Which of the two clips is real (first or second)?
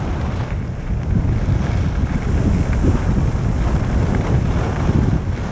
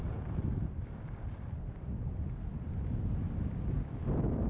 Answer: first